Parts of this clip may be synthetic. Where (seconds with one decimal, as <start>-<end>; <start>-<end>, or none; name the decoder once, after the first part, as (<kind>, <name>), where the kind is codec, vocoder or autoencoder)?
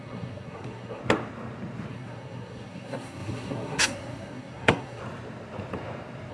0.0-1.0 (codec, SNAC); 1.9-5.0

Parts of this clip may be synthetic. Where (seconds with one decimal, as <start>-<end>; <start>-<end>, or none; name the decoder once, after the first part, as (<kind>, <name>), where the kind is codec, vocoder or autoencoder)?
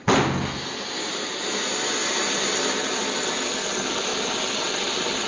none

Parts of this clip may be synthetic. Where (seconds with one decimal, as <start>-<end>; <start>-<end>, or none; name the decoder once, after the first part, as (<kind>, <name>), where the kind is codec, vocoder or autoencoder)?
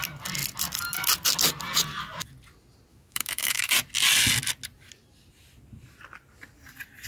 2.9-3.7 (autoencoder, DAC-VAE)